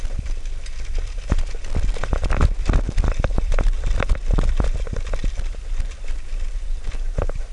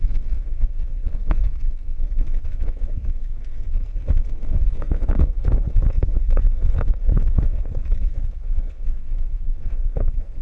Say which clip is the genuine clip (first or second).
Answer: first